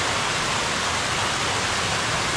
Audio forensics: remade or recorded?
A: recorded